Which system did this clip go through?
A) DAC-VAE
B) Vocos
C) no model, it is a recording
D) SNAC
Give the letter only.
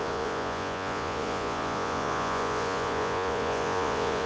B